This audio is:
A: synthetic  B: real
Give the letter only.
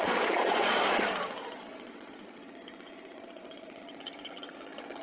A